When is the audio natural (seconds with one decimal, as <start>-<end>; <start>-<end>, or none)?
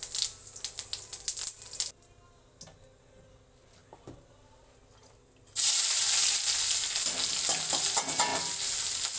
0.0-9.2